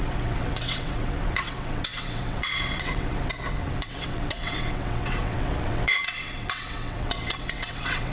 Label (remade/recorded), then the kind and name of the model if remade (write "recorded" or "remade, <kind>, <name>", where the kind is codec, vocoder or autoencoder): remade, vocoder, WaveNeXt